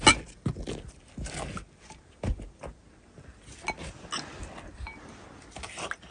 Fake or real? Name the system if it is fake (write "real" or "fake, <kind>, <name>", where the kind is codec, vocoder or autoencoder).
real